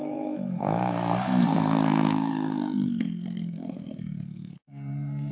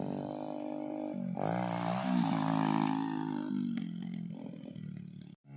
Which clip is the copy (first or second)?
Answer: first